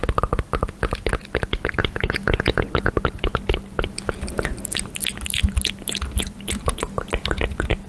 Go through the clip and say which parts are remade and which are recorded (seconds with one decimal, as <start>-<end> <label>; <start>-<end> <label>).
0.0-1.8 recorded; 1.8-2.6 remade; 2.6-7.9 recorded